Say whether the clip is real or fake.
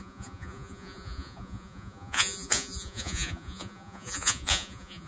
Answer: fake